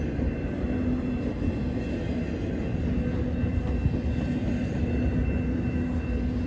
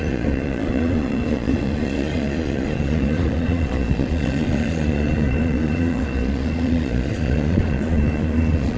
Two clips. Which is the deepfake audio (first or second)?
second